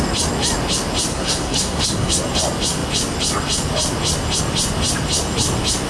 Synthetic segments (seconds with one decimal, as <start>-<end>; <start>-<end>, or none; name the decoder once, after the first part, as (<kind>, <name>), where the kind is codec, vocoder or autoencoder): 1.1-2.2 (codec, SNAC)